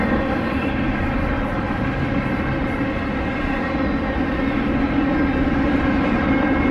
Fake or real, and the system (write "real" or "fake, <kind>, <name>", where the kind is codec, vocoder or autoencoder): real